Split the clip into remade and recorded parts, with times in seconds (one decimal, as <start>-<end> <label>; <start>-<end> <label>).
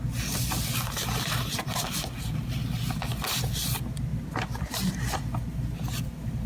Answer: 0.0-6.5 recorded